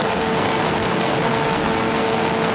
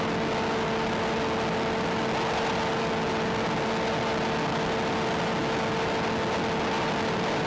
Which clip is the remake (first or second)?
first